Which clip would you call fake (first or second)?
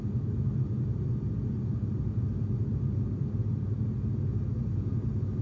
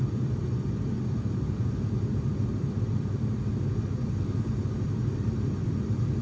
second